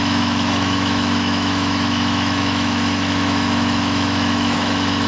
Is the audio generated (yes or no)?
yes